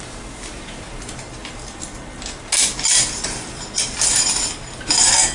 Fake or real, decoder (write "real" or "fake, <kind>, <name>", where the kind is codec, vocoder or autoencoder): real